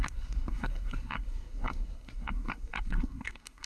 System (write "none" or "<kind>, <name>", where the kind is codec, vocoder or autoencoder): codec, SNAC